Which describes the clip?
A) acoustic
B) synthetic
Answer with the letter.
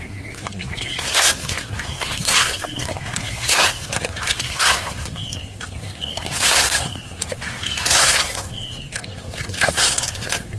B